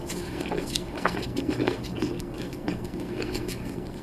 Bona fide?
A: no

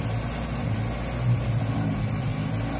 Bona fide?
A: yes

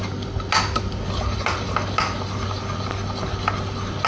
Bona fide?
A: yes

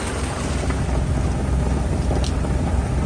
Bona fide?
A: yes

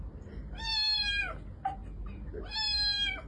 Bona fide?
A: yes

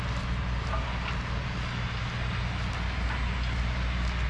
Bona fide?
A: yes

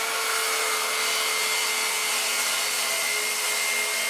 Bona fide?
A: yes